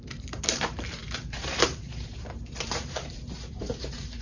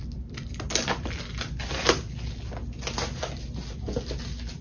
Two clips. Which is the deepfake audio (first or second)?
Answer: first